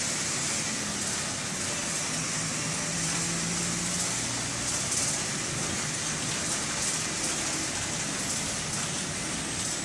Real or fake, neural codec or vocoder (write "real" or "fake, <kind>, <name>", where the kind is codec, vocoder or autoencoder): real